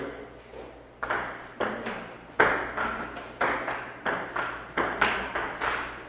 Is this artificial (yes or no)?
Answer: no